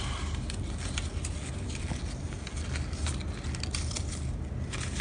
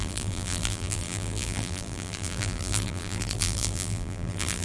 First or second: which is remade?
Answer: second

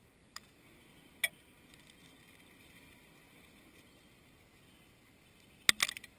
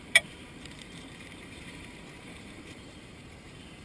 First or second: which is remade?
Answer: second